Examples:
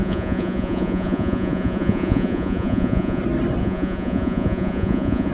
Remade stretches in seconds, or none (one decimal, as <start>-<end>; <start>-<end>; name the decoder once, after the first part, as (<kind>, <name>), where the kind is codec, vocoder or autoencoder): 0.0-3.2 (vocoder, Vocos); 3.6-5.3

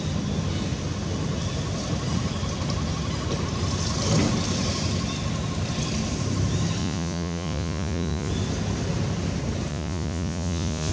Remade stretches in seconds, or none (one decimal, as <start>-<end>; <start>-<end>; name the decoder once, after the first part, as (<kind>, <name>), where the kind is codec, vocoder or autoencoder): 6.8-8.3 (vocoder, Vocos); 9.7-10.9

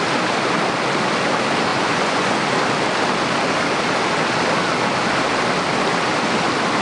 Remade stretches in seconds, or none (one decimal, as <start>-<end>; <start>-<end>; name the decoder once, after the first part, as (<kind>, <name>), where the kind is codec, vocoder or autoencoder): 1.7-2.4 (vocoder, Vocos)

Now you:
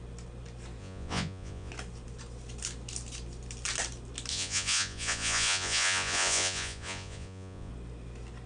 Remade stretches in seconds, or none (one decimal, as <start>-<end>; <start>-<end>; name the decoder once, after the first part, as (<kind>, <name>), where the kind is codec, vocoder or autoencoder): 0.8-1.7 (vocoder, Vocos); 4.3-7.7

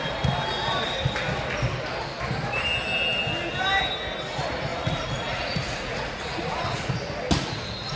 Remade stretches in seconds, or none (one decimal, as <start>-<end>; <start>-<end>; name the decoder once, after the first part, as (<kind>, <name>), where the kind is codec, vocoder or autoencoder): 4.7-6.9 (vocoder, Vocos)